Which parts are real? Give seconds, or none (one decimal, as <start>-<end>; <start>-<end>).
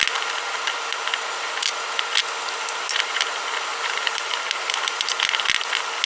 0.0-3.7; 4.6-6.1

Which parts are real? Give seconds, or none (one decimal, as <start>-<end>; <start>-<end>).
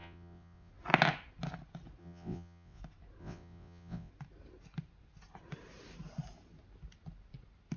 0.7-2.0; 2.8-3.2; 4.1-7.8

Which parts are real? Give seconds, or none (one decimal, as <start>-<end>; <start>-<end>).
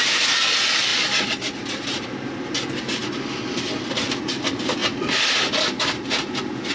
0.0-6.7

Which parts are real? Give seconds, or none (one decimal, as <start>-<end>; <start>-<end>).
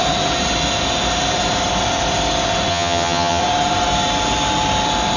0.0-2.7; 3.4-5.2